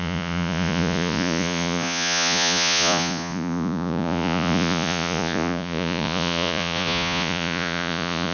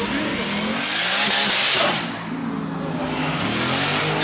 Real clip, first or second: second